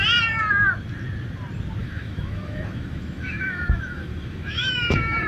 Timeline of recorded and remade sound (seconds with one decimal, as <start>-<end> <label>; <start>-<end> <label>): 0.0-1.8 recorded; 1.8-5.3 remade